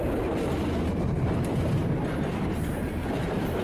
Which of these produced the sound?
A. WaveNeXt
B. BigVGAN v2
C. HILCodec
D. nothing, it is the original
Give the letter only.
D